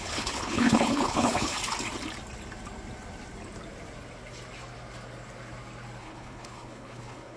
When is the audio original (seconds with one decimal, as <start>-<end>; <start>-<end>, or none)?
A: 1.6-6.0